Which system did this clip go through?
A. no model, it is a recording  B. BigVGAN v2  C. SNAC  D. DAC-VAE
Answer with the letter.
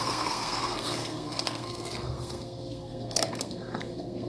C